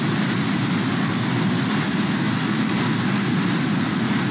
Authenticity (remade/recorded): recorded